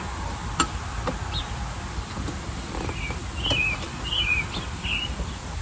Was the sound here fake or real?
real